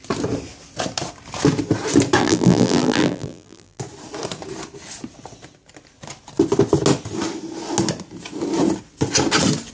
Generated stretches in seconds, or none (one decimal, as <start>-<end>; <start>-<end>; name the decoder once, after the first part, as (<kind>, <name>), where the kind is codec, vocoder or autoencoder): 2.2-3.8 (vocoder, BigVGAN v2)